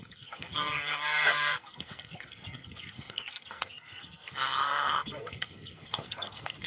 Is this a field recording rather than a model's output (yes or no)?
no